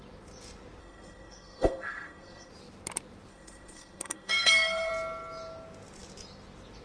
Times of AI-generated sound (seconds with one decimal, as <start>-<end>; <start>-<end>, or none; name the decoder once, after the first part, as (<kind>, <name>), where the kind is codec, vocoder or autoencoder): 0.8-2.5 (codec, SNAC); 3.3-4.9